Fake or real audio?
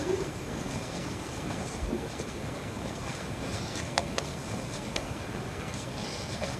fake